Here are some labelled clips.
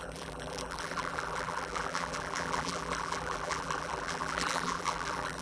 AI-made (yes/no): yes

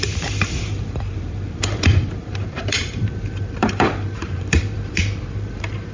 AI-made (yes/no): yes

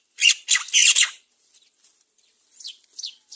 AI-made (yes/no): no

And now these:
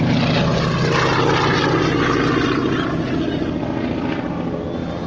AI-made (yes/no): no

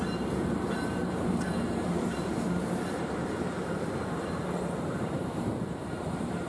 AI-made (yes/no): yes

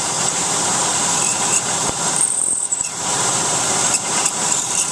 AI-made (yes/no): yes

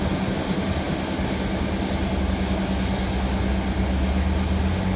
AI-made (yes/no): no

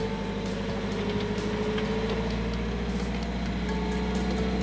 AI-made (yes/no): no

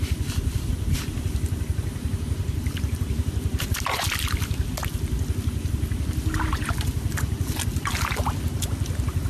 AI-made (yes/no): no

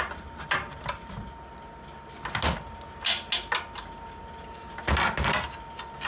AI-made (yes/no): no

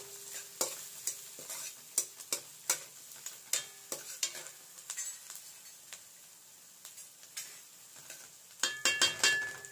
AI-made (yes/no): no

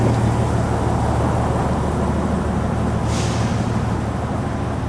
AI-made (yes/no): no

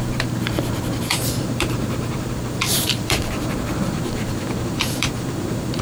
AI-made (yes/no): yes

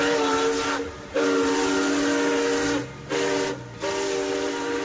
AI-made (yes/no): no